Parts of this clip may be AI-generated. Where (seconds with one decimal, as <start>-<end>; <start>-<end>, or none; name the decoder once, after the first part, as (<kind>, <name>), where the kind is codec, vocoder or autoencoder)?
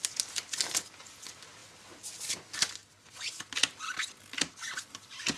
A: none